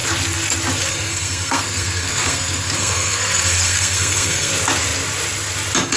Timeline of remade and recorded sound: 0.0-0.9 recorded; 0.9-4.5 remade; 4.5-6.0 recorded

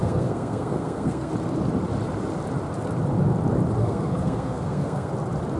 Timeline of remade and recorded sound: 0.0-1.3 remade; 1.3-3.8 recorded; 3.8-5.1 remade; 5.1-5.6 recorded

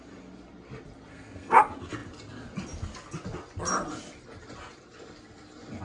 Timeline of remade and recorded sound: 0.0-1.1 recorded; 1.1-1.6 remade; 1.6-5.8 recorded

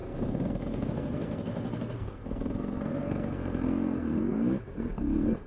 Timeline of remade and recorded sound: 0.0-5.5 remade

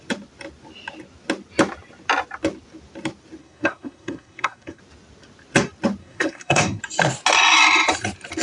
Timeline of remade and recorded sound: 0.0-3.4 recorded; 3.4-4.8 remade; 4.8-6.0 recorded; 6.0-6.8 remade; 6.8-8.4 recorded

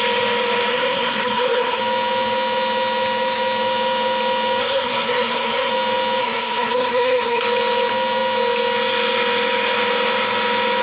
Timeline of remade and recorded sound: 0.0-0.7 recorded; 0.7-1.8 remade; 1.8-4.6 recorded; 4.6-5.7 remade; 5.7-6.2 recorded; 6.2-7.4 remade; 7.4-10.8 recorded

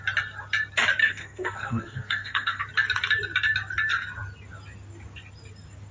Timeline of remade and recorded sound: 0.0-1.0 recorded; 1.0-2.6 remade; 2.6-5.9 recorded